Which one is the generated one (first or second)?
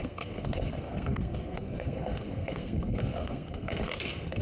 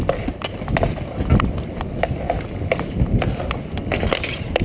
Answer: first